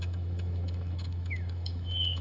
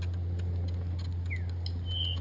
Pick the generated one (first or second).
first